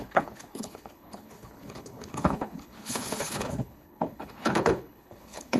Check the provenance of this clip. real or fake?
fake